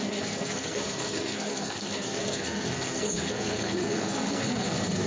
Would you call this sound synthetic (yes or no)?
yes